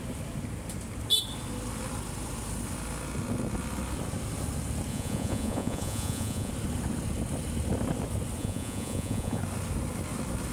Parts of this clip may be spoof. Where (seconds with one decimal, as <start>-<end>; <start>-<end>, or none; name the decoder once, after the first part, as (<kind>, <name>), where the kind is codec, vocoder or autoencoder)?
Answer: 4.9-6.5 (vocoder, Vocos); 8.4-9.4